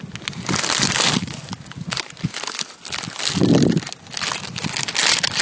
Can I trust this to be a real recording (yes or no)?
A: yes